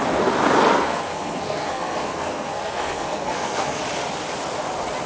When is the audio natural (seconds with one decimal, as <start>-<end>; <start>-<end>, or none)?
0.0-0.7; 3.8-5.1